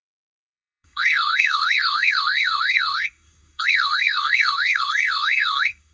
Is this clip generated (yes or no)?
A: yes